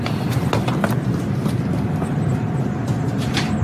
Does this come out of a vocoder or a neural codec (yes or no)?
no